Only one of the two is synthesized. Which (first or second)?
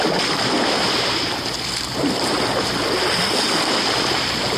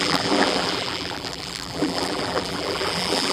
second